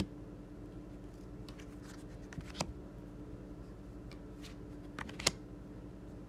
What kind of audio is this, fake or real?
real